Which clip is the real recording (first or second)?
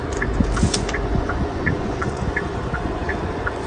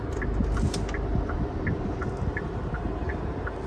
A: second